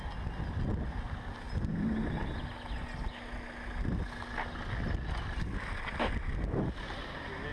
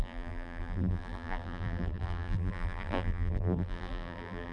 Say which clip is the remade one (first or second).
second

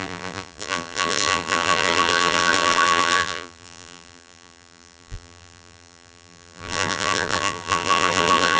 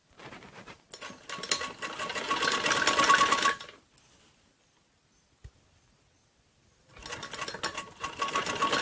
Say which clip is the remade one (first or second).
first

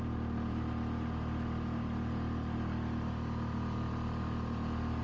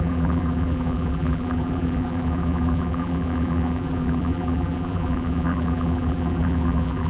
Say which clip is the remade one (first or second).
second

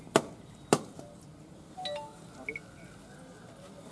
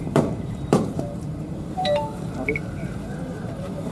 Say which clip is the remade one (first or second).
second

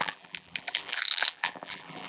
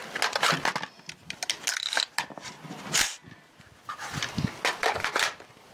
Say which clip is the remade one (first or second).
first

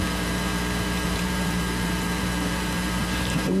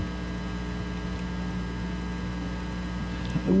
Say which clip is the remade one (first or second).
first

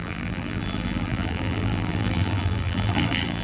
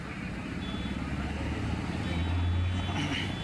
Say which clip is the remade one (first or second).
first